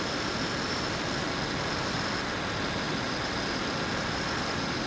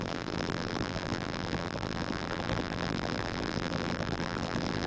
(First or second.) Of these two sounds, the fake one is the second